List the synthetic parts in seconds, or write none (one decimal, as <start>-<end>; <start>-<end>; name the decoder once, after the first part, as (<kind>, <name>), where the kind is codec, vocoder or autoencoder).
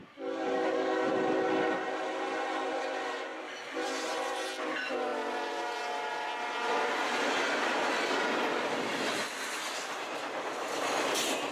0.0-1.1 (codec, DAC)